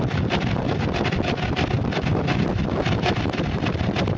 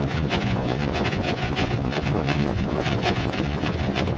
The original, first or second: first